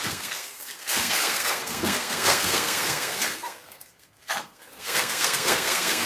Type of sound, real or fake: fake